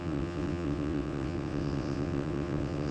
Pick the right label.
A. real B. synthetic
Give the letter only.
B